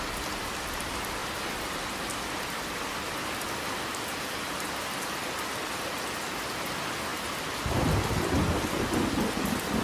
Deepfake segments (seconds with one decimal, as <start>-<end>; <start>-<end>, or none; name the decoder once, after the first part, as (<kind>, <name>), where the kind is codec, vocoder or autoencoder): none